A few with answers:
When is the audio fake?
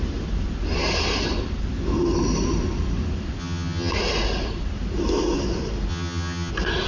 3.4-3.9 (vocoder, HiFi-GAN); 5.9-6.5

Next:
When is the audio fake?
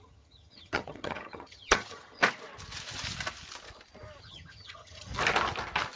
0.0-2.2 (vocoder, HiFi-GAN); 4.2-5.1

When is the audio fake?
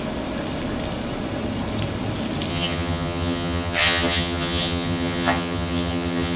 2.5-6.4 (vocoder, HiFi-GAN)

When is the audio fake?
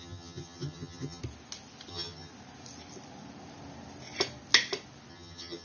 0.0-1.2 (vocoder, HiFi-GAN); 1.9-2.3; 5.1-5.6